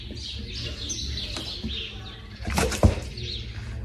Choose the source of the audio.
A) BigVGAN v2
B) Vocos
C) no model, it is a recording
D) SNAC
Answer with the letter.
C